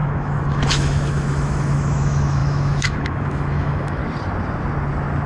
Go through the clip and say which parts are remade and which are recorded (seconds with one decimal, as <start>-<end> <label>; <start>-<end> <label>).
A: 0.0-4.0 remade; 4.0-5.3 recorded